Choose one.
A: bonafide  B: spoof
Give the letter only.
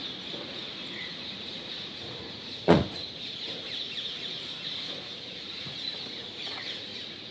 B